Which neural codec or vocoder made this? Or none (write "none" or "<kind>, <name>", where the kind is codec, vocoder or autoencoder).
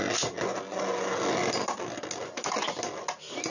none